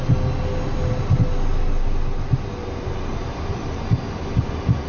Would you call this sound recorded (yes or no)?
yes